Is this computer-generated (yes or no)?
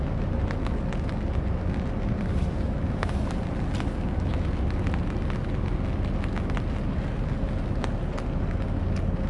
no